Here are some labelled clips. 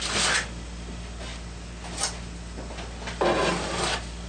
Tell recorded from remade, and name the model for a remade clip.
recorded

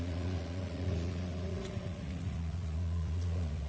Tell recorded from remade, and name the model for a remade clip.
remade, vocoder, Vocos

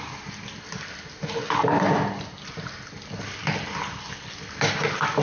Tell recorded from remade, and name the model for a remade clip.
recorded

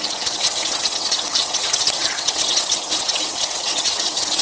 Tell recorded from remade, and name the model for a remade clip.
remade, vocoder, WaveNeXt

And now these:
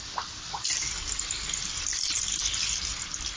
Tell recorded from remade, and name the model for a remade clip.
recorded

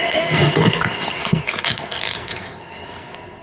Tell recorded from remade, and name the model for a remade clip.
remade, codec, SNAC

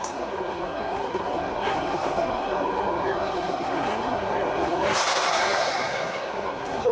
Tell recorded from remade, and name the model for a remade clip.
remade, codec, SNAC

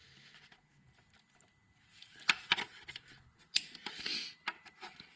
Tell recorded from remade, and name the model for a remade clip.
recorded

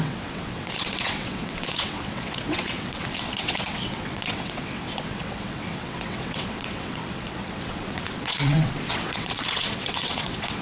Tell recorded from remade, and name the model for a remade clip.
remade, vocoder, WaveNeXt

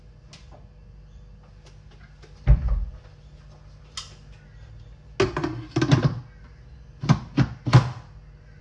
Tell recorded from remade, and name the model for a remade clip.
recorded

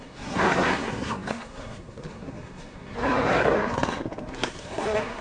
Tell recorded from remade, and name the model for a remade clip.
remade, codec, SNAC